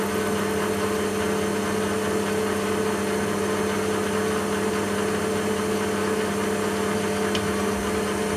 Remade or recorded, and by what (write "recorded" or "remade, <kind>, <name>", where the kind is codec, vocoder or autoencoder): recorded